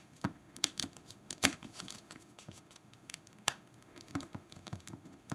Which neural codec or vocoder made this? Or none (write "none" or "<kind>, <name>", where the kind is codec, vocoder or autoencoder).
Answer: autoencoder, DAC-VAE